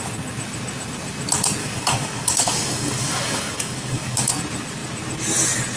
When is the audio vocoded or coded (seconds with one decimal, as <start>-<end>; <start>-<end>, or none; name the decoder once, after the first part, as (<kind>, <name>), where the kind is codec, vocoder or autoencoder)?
1.6-4.3 (codec, DAC)